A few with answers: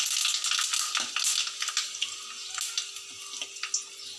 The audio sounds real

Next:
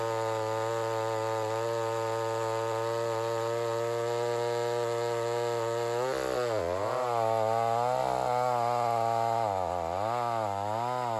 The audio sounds real